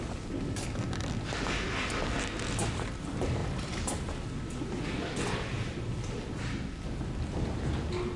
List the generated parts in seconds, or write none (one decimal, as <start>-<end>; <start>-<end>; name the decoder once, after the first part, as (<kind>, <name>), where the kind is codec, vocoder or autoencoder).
3.4-4.3 (vocoder, BigVGAN v2)